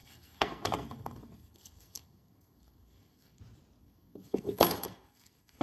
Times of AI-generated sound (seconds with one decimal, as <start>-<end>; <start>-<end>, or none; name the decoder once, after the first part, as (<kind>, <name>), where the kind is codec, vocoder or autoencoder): 0.0-3.4 (codec, SNAC); 3.8-5.6